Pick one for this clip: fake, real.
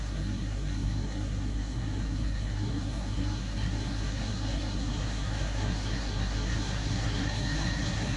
fake